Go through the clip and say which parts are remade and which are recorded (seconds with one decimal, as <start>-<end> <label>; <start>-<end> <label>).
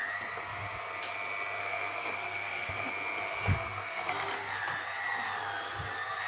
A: 0.0-1.6 recorded; 1.6-2.9 remade; 2.9-3.5 recorded; 3.5-4.5 remade; 4.5-6.3 recorded